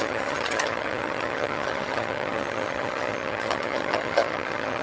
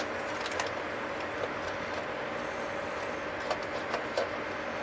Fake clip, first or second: first